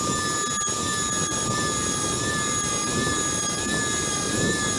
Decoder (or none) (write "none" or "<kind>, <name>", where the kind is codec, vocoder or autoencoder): none